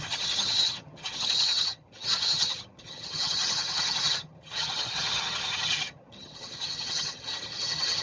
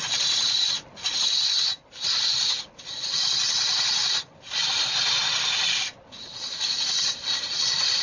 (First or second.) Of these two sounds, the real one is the second